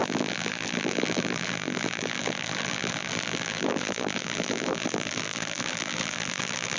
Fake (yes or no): yes